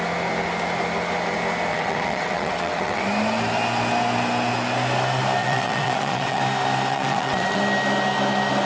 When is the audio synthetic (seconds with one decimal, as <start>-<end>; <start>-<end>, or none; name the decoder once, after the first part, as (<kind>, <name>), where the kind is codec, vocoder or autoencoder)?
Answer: 1.7-3.0 (vocoder, WaveNeXt); 5.4-6.4; 6.9-7.6